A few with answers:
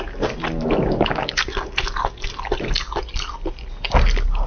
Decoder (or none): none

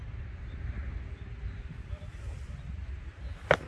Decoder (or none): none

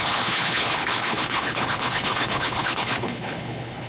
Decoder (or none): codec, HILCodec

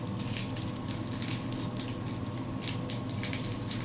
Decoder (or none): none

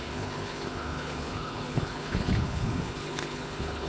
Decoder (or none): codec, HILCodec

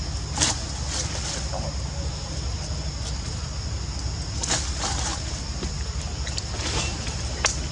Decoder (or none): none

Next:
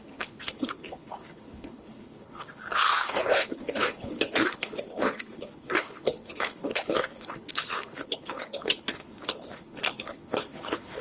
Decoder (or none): codec, HILCodec